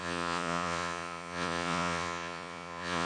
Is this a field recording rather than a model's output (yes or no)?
no